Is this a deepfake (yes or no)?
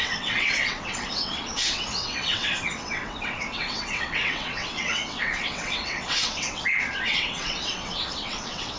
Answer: yes